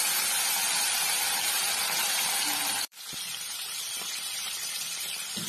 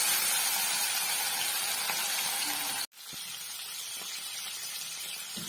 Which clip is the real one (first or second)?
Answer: second